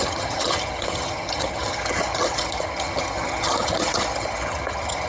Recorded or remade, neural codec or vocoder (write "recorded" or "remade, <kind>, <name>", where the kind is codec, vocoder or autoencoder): remade, vocoder, HiFi-GAN